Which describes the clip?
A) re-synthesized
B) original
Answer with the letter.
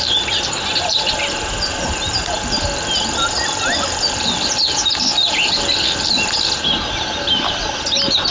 B